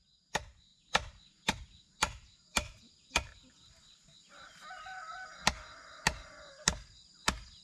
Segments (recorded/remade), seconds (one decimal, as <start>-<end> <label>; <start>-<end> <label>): 0.0-7.6 recorded